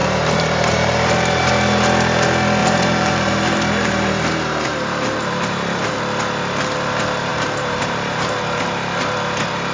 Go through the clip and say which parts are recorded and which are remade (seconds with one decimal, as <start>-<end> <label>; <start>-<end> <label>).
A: 0.0-1.5 remade; 1.5-2.6 recorded; 2.6-6.0 remade; 6.0-7.3 recorded; 7.3-8.6 remade; 8.6-9.7 recorded